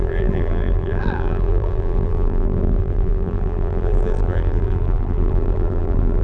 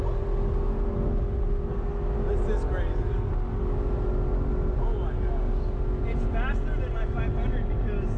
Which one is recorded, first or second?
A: second